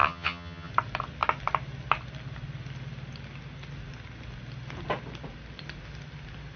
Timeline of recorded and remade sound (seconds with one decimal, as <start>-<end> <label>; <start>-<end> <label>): 0.0-0.7 remade; 0.7-6.6 recorded